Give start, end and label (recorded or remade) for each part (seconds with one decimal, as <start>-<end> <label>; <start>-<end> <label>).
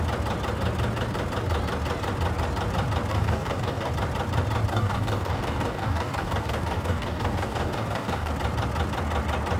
0.0-3.1 recorded; 3.1-3.9 remade; 3.9-4.7 recorded; 4.7-8.3 remade; 8.3-9.6 recorded